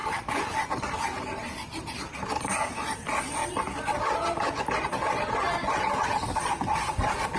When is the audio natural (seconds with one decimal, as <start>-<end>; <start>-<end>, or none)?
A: 1.6-7.4